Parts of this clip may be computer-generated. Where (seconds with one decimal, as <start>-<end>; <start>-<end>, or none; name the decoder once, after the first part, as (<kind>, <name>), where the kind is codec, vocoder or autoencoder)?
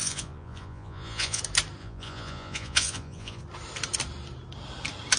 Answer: 0.0-1.4 (vocoder, Vocos); 1.8-3.4